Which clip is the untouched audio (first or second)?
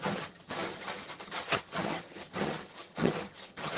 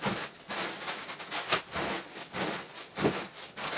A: second